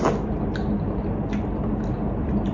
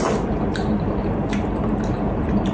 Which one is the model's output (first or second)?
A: second